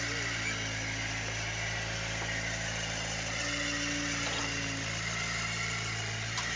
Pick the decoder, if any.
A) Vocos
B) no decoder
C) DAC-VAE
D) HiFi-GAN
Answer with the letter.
B